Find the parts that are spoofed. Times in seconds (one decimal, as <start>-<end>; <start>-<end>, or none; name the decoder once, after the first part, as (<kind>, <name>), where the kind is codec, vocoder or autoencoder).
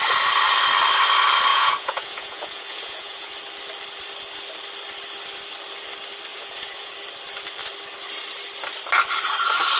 1.5-3.3 (vocoder, Vocos); 6.3-6.9